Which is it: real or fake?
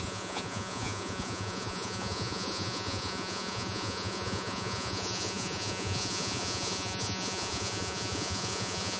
fake